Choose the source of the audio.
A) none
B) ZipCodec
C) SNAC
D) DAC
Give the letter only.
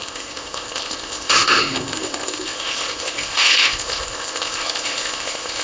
B